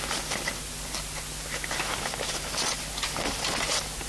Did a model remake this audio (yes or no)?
no